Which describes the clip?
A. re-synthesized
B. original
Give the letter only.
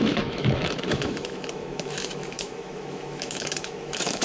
A